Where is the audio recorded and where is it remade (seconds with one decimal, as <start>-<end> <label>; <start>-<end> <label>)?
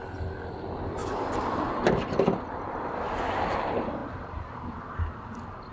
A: 0.0-5.7 recorded